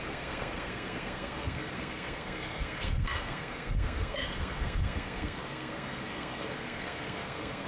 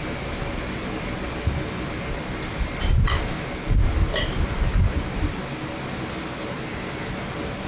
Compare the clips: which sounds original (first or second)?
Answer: second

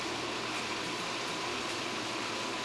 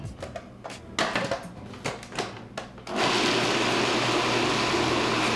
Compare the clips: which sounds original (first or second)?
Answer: second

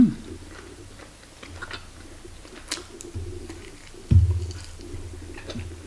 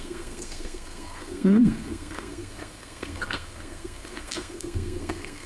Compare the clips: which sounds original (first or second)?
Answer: first